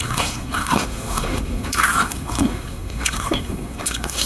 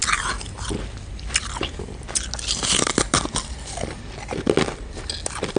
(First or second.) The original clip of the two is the second